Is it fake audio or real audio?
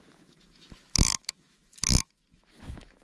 fake